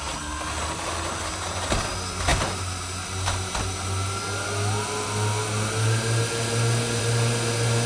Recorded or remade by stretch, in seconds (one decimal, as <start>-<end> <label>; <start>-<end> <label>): 0.0-7.9 recorded